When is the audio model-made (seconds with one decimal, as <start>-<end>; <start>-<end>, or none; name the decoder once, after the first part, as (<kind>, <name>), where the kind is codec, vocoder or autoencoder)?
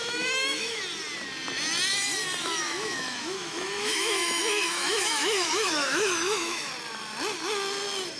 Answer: 0.0-0.8 (autoencoder, DAC-VAE); 2.4-6.7